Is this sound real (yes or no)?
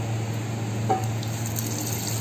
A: yes